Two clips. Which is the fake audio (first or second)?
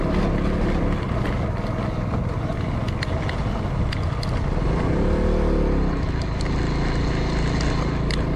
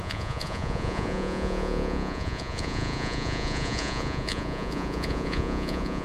second